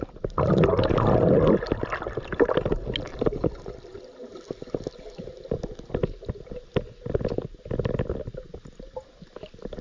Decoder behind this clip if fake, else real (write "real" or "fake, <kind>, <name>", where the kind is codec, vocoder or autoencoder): real